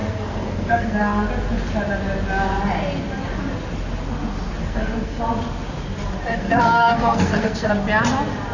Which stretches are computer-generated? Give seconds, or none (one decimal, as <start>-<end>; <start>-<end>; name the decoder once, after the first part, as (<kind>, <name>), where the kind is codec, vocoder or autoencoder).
0.0-1.3 (codec, SNAC); 4.6-5.2; 6.3-7.7